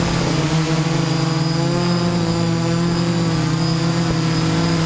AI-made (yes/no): no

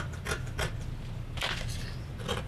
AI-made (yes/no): no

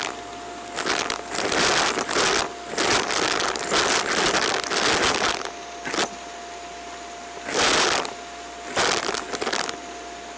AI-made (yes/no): no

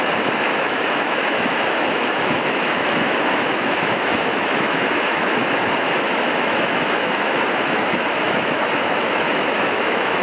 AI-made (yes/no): yes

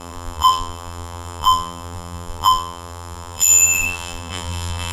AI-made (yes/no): yes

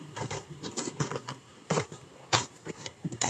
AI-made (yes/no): yes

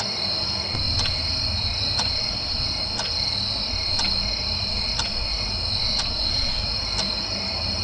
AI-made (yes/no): no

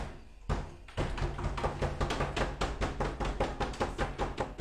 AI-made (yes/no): no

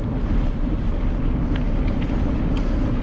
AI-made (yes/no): no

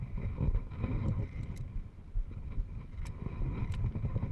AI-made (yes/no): no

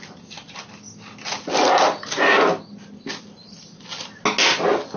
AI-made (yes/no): no